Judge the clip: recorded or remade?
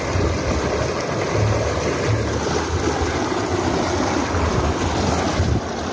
recorded